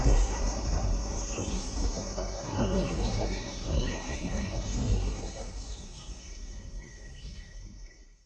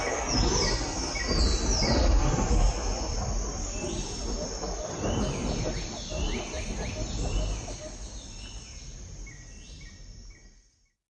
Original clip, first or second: second